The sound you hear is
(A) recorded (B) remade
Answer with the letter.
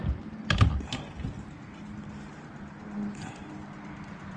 A